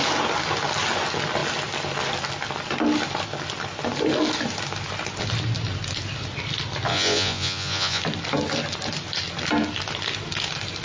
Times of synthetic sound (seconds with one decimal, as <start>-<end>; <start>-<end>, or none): 6.9-8.0